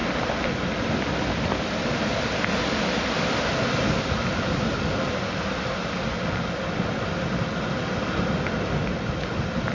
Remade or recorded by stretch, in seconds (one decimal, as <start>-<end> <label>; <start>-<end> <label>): 0.0-9.7 recorded